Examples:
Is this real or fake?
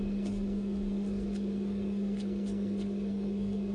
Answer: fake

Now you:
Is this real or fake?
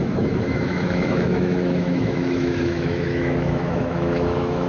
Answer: fake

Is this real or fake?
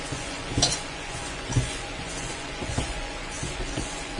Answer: fake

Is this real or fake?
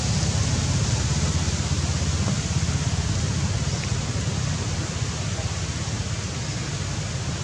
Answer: real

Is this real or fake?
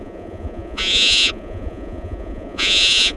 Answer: fake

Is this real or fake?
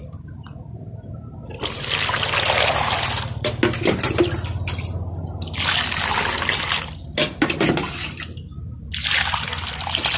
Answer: real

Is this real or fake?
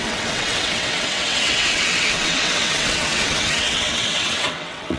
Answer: fake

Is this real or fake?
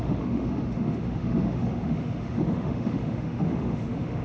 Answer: fake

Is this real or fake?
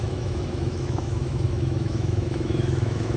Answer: fake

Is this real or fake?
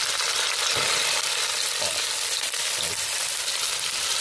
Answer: real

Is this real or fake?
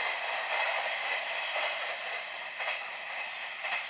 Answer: real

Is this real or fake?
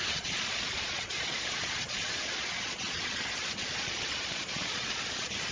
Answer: fake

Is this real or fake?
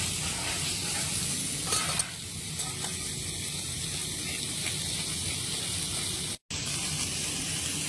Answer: real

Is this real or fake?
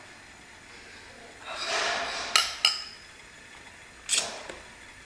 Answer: real